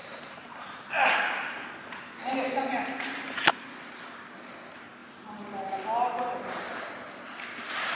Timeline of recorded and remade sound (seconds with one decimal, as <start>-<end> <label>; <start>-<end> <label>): 0.0-0.9 remade; 0.9-8.0 recorded